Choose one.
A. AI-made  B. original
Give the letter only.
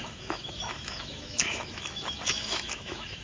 A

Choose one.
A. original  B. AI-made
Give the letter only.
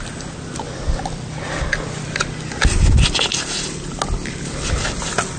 A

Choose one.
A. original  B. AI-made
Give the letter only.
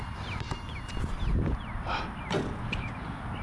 A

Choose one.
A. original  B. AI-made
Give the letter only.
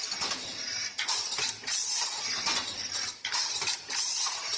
A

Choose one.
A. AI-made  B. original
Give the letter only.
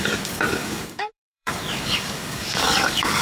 A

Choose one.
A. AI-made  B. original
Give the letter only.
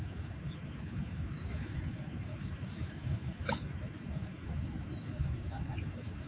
A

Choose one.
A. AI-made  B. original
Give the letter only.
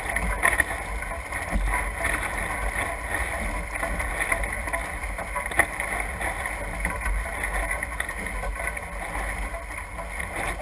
B